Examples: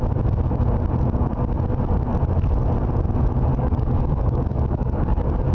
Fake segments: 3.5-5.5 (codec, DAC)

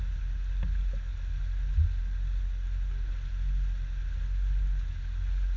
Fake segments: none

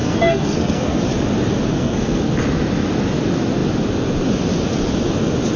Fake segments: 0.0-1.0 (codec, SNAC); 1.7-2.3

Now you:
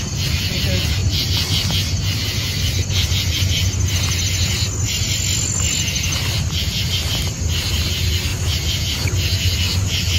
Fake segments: none

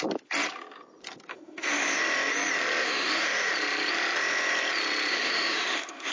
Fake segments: 1.3-2.0 (autoencoder, DAC-VAE); 2.8-3.5; 5.1-6.1

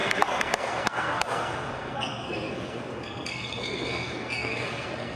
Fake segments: 0.0-5.2 (codec, SNAC)

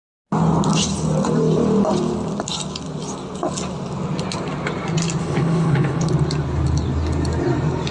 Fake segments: 5.2-6.1 (codec, HILCodec)